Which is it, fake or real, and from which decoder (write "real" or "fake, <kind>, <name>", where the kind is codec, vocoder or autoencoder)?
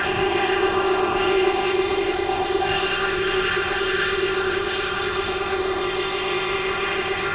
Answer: fake, codec, ZipCodec